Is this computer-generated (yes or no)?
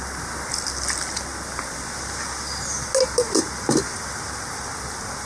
no